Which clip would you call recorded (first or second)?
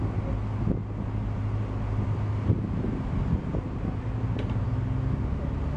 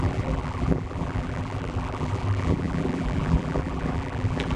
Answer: first